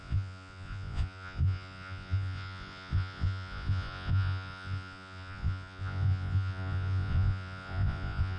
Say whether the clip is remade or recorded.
remade